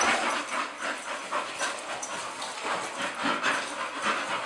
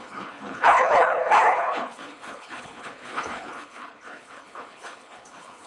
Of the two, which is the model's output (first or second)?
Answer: second